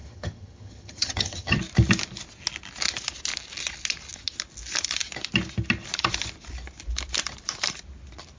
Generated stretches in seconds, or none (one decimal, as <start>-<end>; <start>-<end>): 0.0-1.6